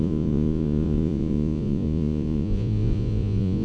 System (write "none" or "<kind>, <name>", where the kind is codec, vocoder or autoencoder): vocoder, Vocos